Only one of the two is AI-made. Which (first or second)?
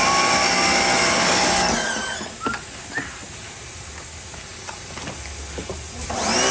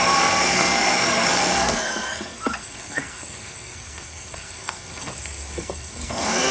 second